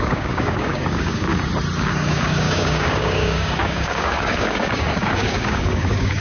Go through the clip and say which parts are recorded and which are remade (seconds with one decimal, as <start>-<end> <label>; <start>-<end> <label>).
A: 0.0-1.3 remade; 1.3-1.8 recorded; 1.8-6.2 remade